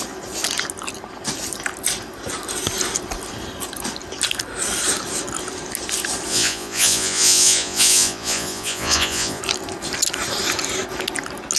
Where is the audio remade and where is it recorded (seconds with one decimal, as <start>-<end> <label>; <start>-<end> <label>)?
0.0-6.3 recorded; 6.3-9.4 remade; 9.4-11.6 recorded